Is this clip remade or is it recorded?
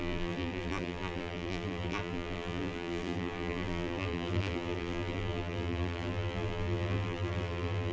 remade